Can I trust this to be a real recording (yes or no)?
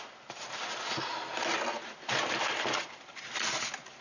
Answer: yes